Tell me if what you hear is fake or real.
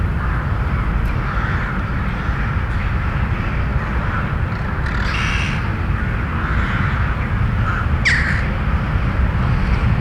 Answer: real